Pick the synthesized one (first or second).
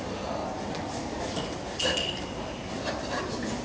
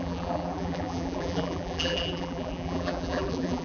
second